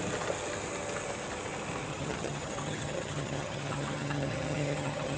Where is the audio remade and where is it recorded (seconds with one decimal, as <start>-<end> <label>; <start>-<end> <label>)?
0.0-1.9 recorded; 1.9-5.2 remade